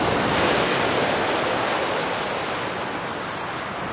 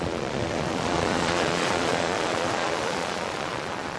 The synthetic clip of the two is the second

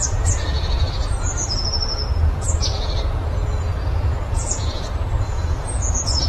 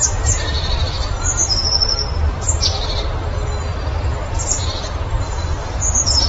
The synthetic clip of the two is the first